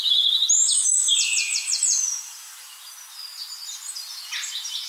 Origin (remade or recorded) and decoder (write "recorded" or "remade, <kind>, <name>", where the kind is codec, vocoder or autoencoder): recorded